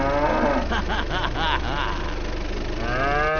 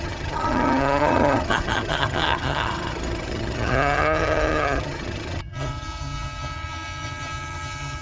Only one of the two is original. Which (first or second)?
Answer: first